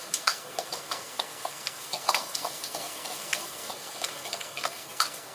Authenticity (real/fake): fake